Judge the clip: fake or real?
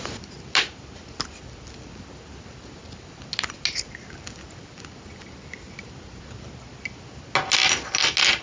real